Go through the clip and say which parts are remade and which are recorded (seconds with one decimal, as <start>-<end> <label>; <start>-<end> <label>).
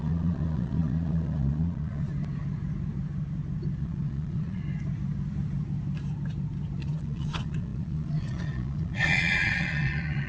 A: 0.0-2.1 remade; 2.1-3.8 recorded; 3.8-4.6 remade; 4.6-6.8 recorded; 6.8-10.3 remade